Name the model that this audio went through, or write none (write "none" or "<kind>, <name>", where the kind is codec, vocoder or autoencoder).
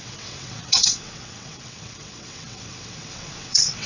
vocoder, WaveNeXt